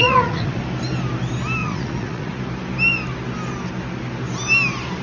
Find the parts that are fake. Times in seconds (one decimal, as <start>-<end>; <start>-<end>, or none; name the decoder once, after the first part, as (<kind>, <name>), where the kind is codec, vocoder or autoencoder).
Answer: 0.0-0.6 (vocoder, Vocos); 1.6-2.4